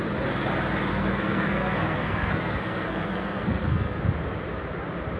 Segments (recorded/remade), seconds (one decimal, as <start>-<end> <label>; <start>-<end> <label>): 0.0-0.9 recorded; 0.9-4.0 remade; 4.0-5.2 recorded